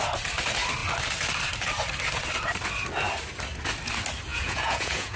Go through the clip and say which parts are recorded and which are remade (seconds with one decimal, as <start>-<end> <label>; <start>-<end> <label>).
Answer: 0.0-4.3 recorded; 4.3-5.2 remade